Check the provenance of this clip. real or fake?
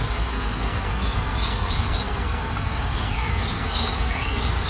fake